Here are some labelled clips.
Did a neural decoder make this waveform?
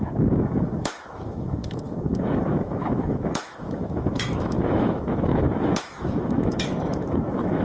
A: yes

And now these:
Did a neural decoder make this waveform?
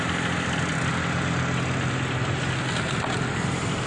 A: no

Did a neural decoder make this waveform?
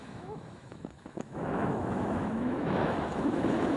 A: yes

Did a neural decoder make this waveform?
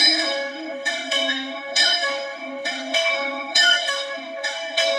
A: yes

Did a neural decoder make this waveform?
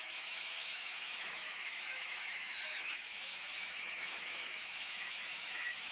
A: yes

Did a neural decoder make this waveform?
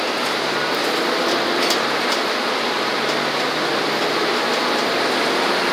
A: no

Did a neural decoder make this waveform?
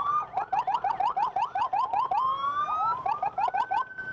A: no